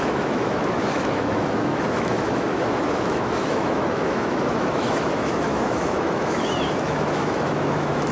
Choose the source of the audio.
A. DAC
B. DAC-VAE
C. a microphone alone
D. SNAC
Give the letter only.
B